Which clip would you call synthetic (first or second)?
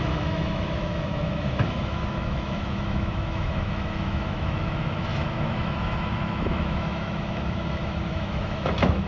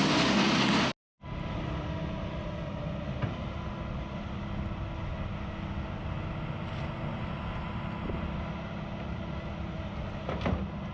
first